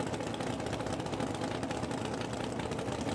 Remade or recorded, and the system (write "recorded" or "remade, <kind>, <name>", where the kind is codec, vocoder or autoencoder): recorded